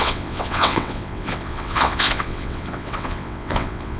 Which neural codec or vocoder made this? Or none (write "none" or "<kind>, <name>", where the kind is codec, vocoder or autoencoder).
vocoder, WaveNeXt